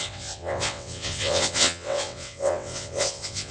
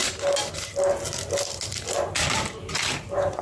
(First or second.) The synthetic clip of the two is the first